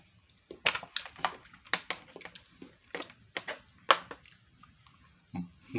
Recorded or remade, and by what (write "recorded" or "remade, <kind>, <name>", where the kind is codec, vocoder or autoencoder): recorded